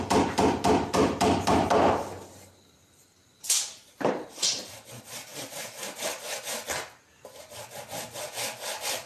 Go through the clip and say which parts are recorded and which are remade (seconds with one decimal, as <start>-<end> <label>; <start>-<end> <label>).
0.0-9.1 recorded